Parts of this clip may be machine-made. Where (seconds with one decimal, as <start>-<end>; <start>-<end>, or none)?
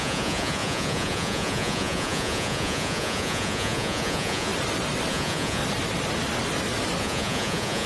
0.0-4.5; 5.1-5.6; 7.0-7.9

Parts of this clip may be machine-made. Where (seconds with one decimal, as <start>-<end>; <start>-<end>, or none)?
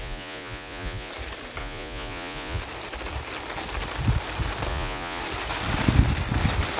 0.0-1.1; 1.6-2.6; 4.7-5.2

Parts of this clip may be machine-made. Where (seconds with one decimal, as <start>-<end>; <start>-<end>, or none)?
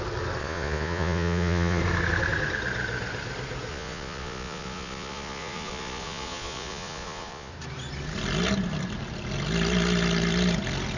0.4-1.8; 3.7-7.5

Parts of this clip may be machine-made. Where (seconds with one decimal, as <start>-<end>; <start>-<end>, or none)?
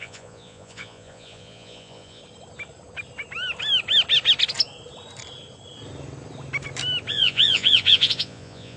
0.0-2.2; 7.1-8.8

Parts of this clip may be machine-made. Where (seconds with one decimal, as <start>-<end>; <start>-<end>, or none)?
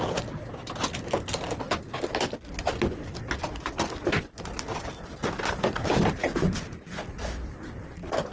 none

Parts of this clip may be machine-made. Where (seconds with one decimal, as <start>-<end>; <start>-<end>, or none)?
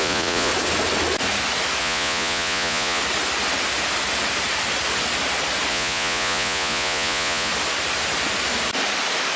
0.0-0.5; 1.8-3.0; 5.7-7.5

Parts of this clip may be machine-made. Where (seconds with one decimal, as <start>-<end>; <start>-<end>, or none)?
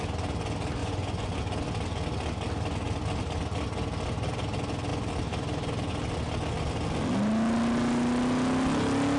0.8-1.4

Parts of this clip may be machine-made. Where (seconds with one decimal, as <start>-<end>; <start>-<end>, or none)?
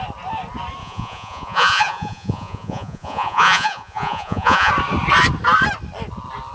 0.8-4.7